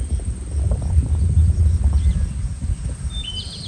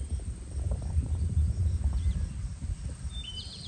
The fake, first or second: second